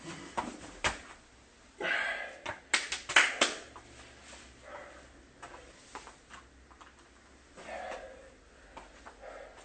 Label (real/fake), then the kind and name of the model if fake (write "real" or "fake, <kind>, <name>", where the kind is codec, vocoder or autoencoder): real